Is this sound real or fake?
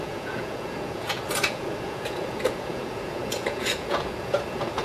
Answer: fake